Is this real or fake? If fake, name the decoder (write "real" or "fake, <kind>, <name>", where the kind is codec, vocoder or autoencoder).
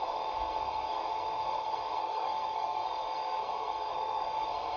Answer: fake, codec, SNAC